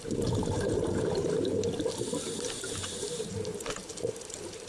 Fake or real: fake